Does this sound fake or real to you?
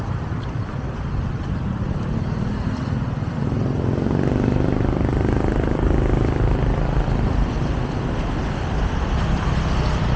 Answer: fake